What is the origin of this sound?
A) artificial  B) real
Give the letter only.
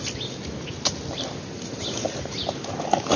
B